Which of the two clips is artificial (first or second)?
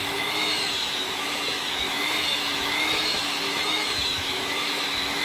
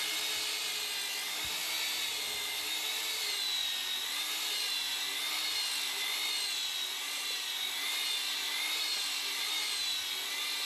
first